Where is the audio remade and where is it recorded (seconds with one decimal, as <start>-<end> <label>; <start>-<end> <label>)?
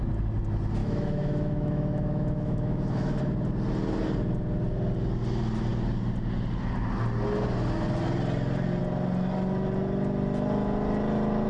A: 0.0-0.8 recorded; 0.8-3.2 remade; 3.2-11.5 recorded